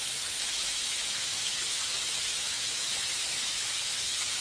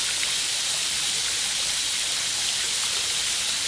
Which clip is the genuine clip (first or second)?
second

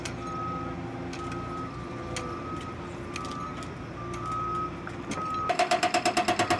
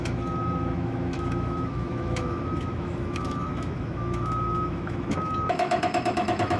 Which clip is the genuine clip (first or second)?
first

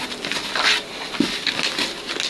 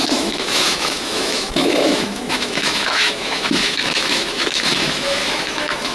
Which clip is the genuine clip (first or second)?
first